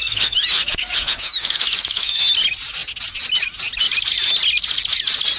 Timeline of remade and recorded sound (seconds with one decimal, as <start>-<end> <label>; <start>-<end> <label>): 0.0-2.3 remade; 2.3-5.4 recorded